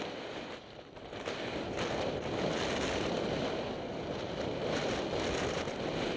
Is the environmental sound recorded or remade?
remade